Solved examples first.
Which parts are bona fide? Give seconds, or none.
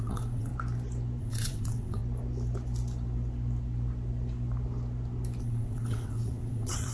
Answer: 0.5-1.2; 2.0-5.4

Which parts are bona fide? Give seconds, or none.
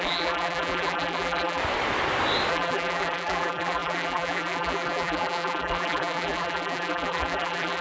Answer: 1.6-2.5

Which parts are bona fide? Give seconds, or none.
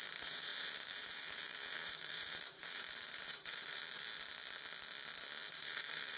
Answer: 3.8-5.5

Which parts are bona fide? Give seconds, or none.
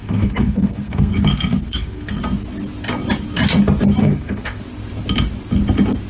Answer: 2.2-4.0; 4.6-6.1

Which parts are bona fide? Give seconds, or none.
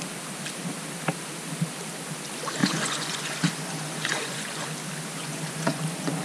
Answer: 0.0-2.6; 4.7-5.2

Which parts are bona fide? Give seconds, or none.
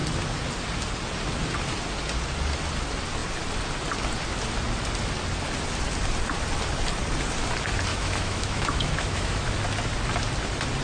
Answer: 0.0-7.9; 9.5-10.8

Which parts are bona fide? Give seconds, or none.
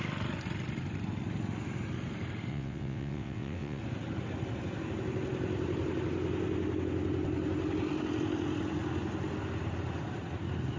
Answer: 0.0-2.5; 3.8-10.8